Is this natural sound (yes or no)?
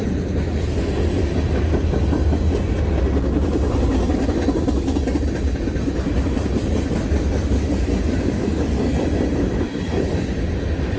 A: yes